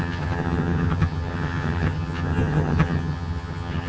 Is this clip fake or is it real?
fake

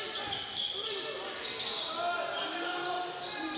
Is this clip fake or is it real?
real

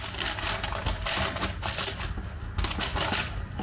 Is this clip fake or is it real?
real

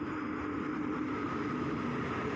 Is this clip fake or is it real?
real